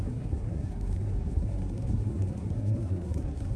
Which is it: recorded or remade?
remade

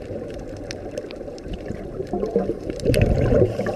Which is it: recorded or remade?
remade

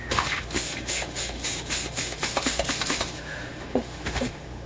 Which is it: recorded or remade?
remade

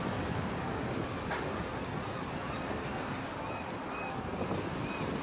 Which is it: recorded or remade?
recorded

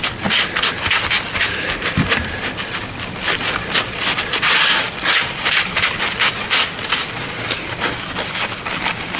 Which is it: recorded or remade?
recorded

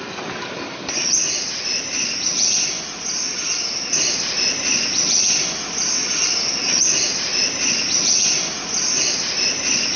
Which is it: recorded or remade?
recorded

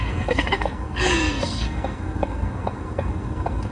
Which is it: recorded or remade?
remade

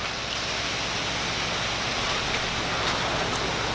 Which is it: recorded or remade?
recorded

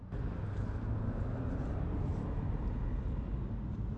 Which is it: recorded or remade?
recorded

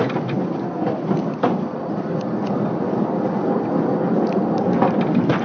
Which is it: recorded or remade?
recorded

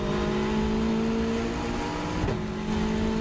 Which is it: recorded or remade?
recorded